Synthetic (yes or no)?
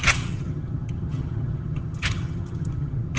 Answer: yes